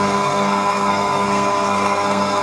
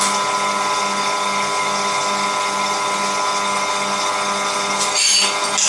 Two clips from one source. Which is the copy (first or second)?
first